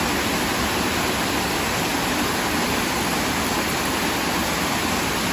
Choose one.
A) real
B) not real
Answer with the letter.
A